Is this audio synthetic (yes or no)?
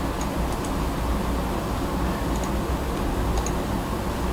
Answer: no